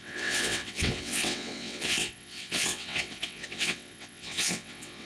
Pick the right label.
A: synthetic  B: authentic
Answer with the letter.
A